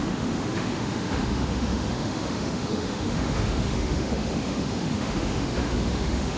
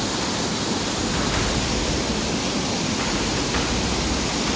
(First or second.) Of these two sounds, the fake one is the first